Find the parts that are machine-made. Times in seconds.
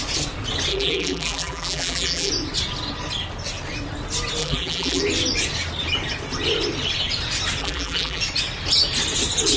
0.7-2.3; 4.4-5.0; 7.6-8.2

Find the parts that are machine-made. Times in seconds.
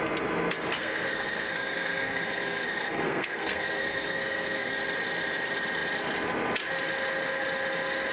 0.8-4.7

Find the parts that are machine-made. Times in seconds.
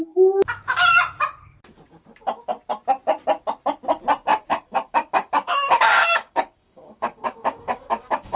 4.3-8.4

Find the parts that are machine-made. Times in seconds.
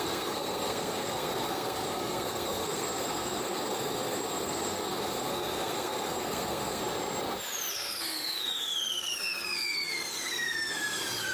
0.0-6.8; 7.7-11.3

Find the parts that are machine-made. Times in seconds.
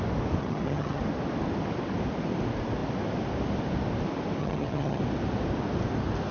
0.4-1.0; 4.4-5.0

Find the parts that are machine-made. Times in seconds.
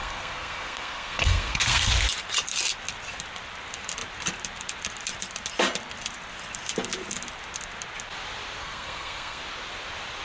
0.0-1.9; 8.6-9.4